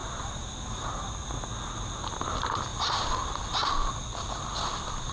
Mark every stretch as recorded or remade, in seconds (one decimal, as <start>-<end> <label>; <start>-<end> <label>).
0.0-1.1 remade; 1.1-2.7 recorded; 2.7-3.4 remade; 3.4-5.1 recorded